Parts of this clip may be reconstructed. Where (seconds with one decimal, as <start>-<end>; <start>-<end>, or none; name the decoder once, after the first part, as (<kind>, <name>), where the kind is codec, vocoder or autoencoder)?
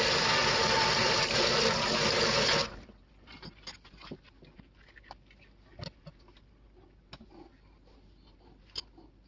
none